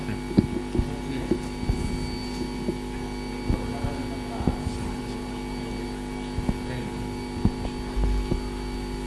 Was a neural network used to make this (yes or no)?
no